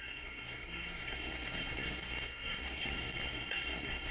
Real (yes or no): no